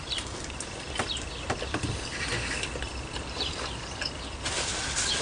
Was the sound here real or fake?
fake